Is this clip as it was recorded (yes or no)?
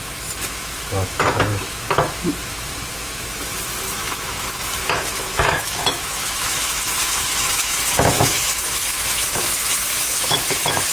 no